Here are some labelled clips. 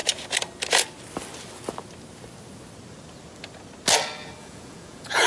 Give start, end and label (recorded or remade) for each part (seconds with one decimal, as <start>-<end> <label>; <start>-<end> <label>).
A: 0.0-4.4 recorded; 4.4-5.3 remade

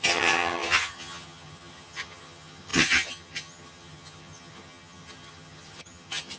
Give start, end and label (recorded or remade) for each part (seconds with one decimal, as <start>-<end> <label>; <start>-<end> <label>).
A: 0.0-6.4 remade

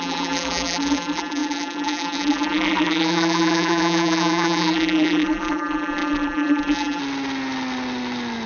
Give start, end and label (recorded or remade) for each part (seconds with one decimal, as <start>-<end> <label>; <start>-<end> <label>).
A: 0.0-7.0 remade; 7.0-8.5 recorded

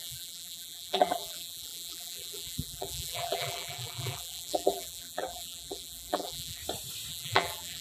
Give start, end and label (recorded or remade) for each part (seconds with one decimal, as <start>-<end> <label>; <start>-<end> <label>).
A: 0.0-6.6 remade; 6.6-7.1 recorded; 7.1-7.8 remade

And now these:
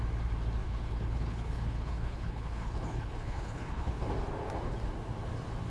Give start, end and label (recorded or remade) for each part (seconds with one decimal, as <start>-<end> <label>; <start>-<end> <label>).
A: 0.0-0.6 recorded; 0.6-4.0 remade; 4.0-5.7 recorded

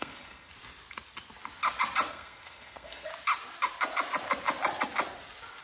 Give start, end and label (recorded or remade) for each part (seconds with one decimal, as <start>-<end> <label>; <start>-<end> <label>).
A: 0.0-0.5 remade; 0.5-2.1 recorded; 2.1-3.1 remade; 3.1-5.6 recorded

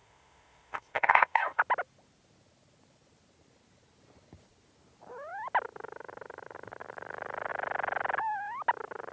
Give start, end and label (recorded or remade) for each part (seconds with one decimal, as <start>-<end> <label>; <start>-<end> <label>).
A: 0.0-1.6 remade; 1.6-9.1 recorded

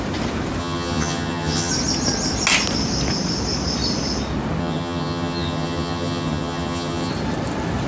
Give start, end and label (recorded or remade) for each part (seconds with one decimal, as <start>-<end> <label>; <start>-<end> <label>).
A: 0.0-0.6 recorded; 0.6-1.7 remade; 1.7-4.6 recorded; 4.6-7.1 remade; 7.1-7.9 recorded